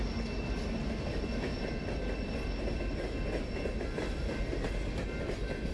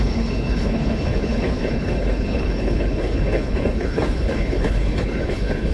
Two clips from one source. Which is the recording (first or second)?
first